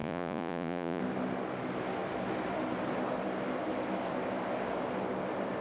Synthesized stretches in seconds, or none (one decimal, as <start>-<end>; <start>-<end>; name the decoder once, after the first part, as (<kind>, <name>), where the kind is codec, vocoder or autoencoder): 0.0-1.0 (vocoder, Vocos)